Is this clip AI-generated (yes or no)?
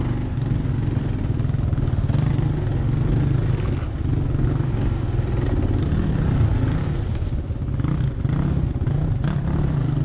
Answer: no